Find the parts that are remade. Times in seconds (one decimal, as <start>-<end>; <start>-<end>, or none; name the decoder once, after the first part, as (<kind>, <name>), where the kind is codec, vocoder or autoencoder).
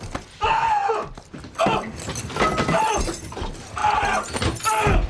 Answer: none